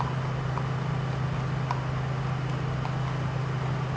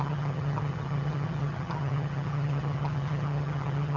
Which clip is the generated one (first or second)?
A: second